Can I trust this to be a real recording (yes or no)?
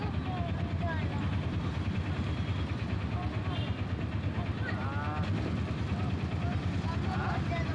yes